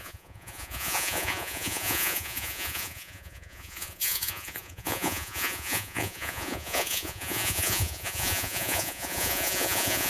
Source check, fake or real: fake